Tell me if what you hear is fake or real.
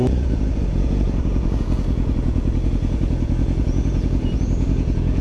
fake